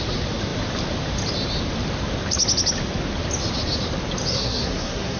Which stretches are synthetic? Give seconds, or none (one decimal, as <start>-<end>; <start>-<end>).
4.3-5.2